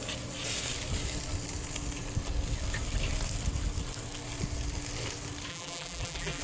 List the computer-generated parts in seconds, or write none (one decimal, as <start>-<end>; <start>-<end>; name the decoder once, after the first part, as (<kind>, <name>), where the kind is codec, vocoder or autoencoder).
5.5-6.4 (vocoder, BigVGAN v2)